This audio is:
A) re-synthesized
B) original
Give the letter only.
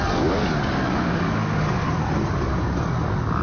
B